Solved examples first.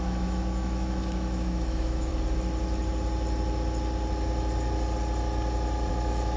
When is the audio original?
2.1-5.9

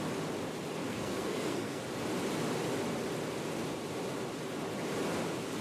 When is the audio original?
0.0-0.8; 1.8-5.6

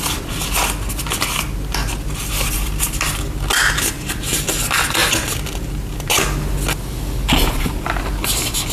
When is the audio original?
0.0-1.8; 2.8-8.7

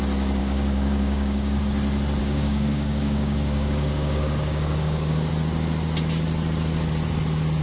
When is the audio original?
0.0-0.4; 1.6-2.2; 5.3-7.6

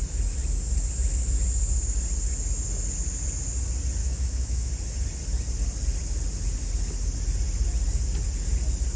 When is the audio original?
0.0-4.0; 4.7-9.0

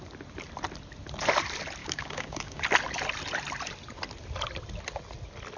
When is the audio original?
0.0-1.8; 2.6-5.6